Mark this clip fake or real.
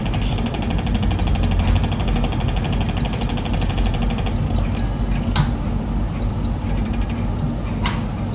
real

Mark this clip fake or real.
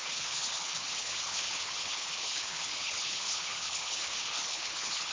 fake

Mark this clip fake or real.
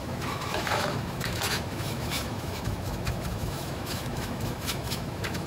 fake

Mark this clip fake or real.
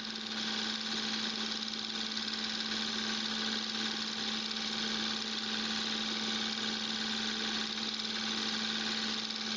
real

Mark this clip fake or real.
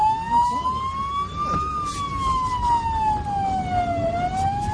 real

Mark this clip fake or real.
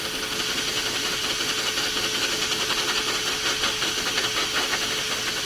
real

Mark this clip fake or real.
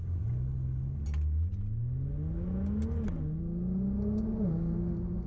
real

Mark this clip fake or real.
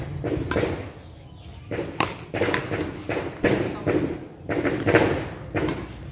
real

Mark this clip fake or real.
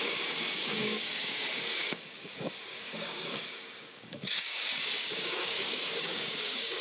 fake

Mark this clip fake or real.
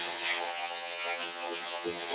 fake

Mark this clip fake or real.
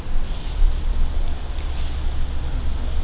real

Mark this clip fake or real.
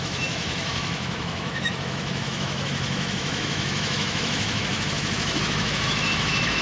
fake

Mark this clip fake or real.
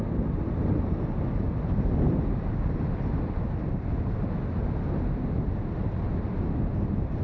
real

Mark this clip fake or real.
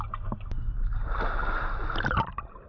real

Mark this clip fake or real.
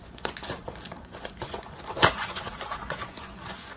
fake